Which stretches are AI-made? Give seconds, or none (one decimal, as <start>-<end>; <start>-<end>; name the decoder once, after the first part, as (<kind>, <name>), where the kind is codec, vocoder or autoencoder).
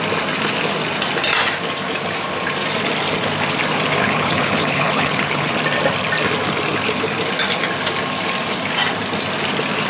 4.0-5.5 (codec, HILCodec)